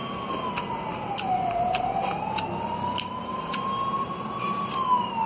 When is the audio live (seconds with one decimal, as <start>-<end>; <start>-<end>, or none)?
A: 0.0-5.3